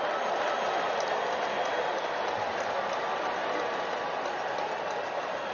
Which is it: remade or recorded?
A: recorded